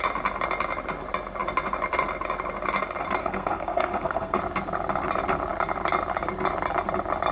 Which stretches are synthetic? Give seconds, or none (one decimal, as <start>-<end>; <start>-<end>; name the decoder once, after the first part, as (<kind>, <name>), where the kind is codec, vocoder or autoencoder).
3.2-4.4 (codec, SNAC)